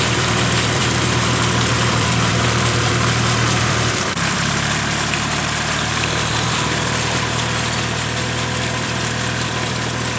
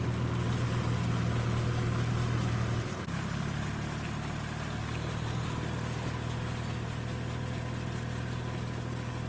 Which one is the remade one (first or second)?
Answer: first